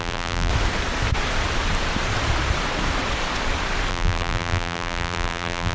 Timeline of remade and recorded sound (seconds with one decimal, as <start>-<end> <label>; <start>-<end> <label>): 0.0-0.5 remade; 0.5-3.9 recorded; 3.9-5.7 remade